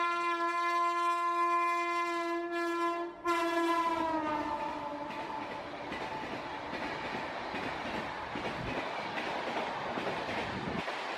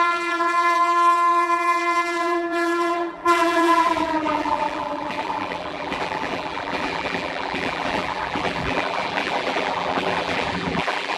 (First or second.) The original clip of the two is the first